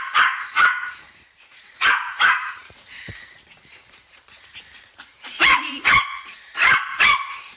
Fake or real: fake